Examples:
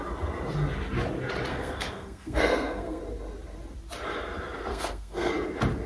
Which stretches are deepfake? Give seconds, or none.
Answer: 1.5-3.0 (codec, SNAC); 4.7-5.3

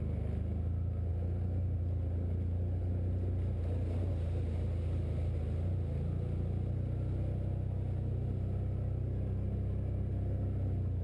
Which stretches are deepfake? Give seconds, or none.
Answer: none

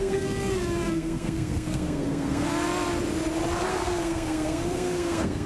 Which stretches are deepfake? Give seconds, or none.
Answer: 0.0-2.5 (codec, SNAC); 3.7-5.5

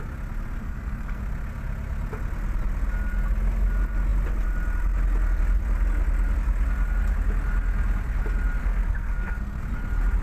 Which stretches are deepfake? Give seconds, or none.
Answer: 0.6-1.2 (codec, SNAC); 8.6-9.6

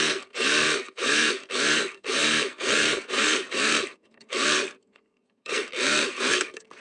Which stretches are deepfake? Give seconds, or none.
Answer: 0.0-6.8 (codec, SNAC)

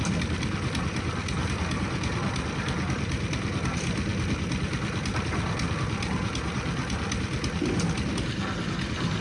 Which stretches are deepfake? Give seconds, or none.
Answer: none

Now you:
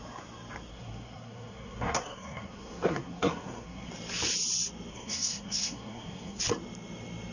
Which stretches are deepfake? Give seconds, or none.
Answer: 0.7-3.9 (codec, SNAC); 4.9-6.4

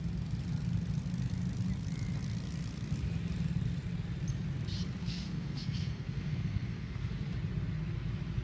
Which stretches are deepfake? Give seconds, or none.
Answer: 5.0-7.1 (codec, SNAC)